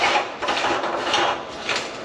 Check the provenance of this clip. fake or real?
fake